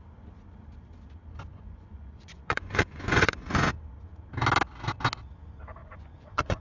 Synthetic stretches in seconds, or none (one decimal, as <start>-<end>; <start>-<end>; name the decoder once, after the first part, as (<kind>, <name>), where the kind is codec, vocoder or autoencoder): 1.5-3.8 (vocoder, Vocos); 5.8-6.6